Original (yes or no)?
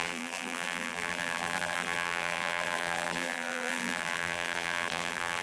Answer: no